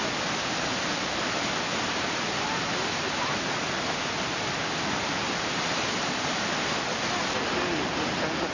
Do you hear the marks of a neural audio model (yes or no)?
no